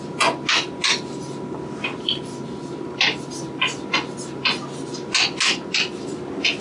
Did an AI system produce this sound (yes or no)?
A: no